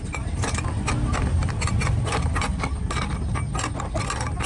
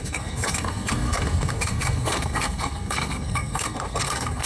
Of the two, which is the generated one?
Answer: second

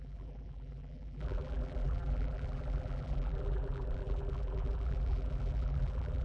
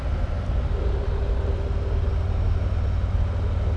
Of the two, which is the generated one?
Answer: first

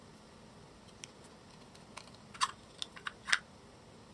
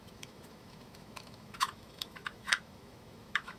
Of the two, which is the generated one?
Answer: second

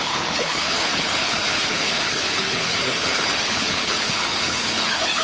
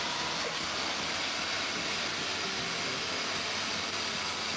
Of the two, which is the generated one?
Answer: first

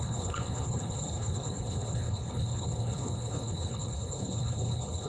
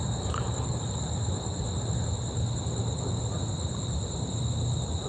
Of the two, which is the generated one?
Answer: first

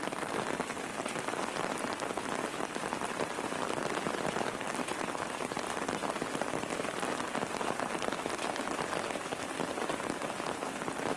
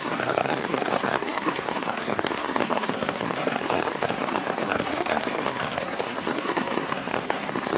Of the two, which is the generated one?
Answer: second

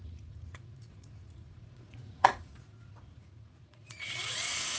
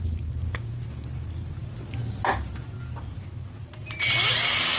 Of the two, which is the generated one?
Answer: first